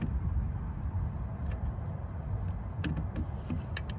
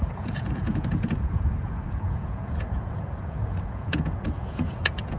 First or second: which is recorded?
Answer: first